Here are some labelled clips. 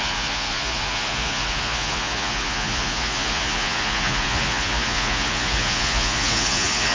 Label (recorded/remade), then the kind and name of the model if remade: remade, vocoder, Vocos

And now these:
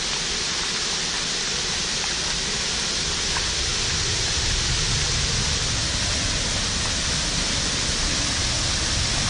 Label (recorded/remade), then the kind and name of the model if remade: recorded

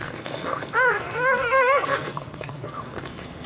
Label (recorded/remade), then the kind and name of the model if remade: remade, codec, SNAC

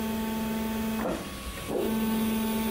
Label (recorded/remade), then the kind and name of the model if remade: recorded